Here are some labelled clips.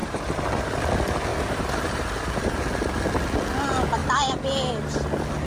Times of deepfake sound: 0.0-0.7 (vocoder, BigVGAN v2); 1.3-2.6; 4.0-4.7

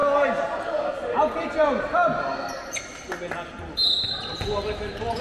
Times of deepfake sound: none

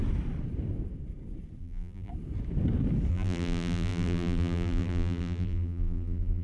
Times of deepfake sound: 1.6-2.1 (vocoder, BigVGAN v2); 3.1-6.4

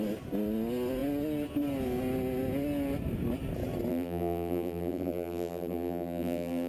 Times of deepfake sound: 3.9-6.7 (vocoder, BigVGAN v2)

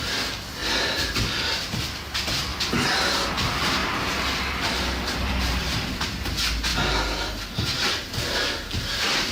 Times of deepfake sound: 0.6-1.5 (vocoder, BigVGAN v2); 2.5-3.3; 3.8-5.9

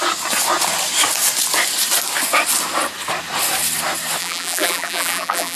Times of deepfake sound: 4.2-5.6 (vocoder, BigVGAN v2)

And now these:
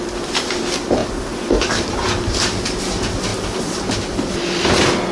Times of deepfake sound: 0.0-3.3 (vocoder, BigVGAN v2); 4.0-5.1